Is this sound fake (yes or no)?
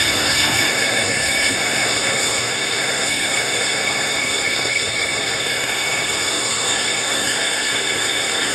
yes